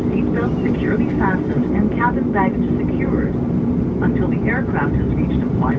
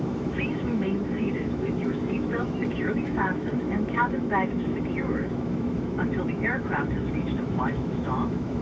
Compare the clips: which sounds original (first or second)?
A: first